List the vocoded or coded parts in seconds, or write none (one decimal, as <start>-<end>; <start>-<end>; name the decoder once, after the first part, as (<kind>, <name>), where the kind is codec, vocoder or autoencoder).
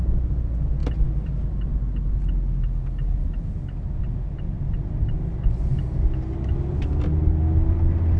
none